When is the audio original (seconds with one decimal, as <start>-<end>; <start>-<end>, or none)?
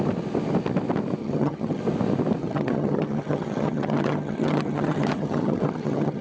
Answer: 0.0-1.2; 1.8-2.4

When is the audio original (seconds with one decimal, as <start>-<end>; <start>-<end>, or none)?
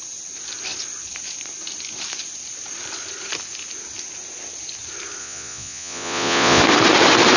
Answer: 0.0-5.2; 6.6-7.4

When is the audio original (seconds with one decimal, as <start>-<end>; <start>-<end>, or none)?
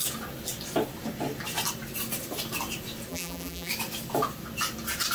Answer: 0.0-3.1; 3.7-5.1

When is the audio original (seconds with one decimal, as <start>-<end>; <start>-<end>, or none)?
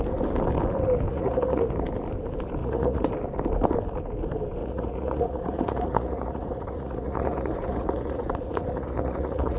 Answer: 0.0-1.1; 1.7-2.6; 3.1-4.6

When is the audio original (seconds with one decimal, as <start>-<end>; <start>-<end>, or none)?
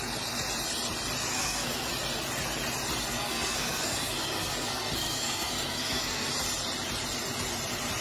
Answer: 0.0-1.3; 1.9-3.0; 6.3-8.0